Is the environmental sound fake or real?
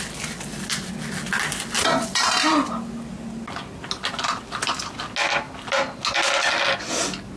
real